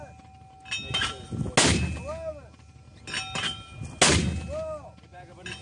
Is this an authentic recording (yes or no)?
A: yes